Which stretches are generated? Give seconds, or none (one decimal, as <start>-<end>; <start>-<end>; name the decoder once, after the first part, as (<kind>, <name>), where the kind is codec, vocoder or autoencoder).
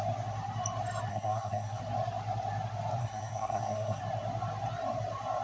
1.1-1.8 (codec, SNAC); 3.0-4.0